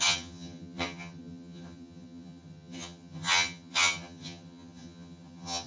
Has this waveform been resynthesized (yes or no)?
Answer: yes